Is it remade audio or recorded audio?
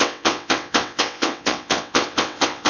remade